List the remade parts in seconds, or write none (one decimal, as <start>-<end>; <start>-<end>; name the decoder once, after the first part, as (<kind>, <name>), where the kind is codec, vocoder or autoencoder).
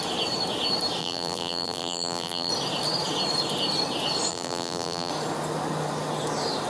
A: 1.0-2.5 (vocoder, BigVGAN v2); 4.3-5.1